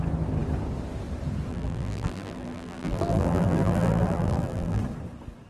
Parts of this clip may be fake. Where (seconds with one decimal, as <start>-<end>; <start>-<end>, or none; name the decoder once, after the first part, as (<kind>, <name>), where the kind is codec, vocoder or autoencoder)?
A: 1.5-4.8 (vocoder, BigVGAN v2)